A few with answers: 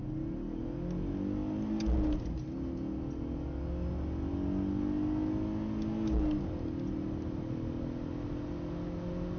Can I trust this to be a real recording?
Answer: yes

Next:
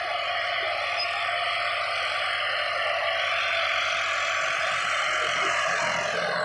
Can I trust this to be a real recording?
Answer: yes